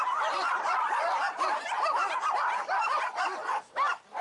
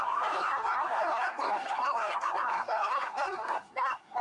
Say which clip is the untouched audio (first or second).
first